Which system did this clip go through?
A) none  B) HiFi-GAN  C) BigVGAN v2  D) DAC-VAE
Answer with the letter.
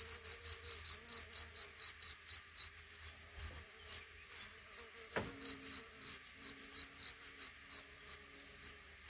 A